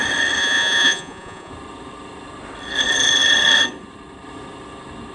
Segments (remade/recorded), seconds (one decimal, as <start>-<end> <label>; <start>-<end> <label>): 0.0-0.4 recorded; 0.4-1.5 remade; 1.5-5.1 recorded